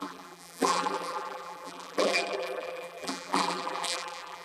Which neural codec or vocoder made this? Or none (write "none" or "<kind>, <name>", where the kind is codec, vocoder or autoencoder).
vocoder, BigVGAN v2